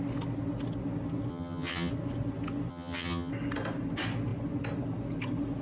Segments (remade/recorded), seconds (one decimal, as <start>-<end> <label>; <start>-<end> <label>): 0.0-1.3 recorded; 1.3-1.9 remade; 1.9-2.7 recorded; 2.7-3.3 remade; 3.3-5.6 recorded